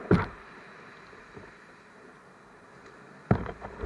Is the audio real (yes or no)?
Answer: no